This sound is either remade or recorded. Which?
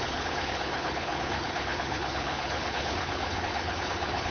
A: remade